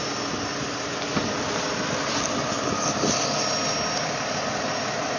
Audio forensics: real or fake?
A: real